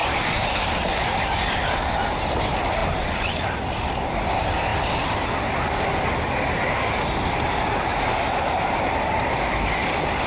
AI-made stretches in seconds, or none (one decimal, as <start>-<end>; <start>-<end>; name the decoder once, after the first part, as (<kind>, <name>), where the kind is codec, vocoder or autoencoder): 0.0-1.6 (vocoder, BigVGAN v2); 2.8-3.8